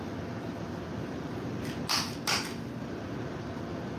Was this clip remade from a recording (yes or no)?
no